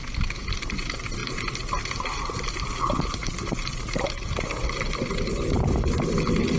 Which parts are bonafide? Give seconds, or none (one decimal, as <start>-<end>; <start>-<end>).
0.0-6.6